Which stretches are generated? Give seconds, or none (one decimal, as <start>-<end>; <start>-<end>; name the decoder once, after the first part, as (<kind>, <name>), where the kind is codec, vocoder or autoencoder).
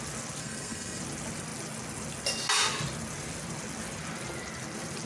0.4-1.0 (codec, SNAC)